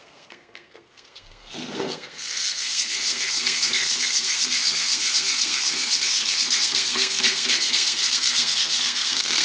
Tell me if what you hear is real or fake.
fake